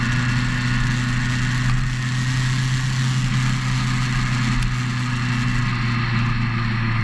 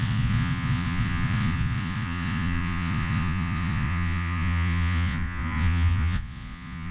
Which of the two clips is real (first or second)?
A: first